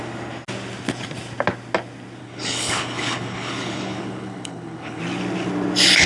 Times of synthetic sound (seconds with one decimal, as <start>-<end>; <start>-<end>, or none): 2.2-5.0